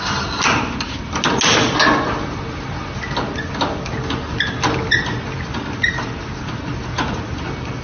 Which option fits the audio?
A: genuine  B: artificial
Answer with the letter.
A